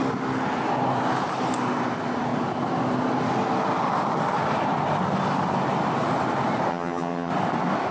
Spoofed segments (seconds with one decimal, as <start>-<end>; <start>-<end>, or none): 6.7-7.3